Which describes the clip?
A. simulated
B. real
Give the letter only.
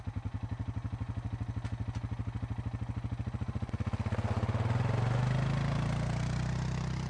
B